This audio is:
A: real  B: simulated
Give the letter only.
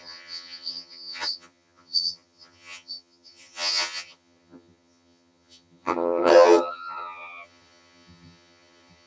B